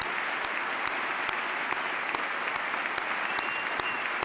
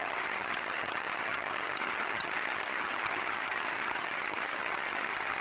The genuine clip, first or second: first